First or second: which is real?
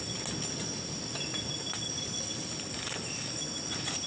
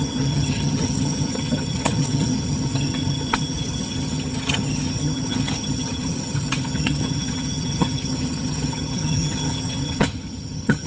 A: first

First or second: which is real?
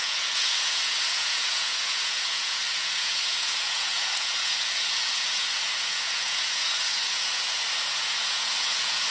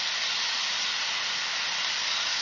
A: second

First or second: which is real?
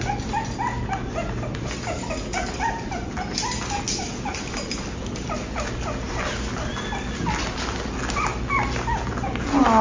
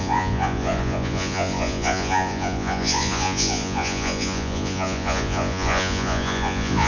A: first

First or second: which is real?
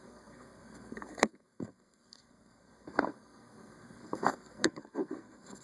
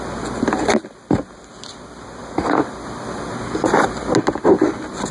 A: second